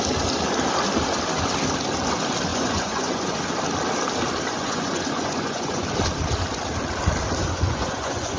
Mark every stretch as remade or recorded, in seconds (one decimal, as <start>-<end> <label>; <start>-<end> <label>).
0.0-2.5 recorded; 2.5-3.4 remade; 3.4-4.5 recorded; 4.5-5.8 remade; 5.8-7.4 recorded; 7.4-8.4 remade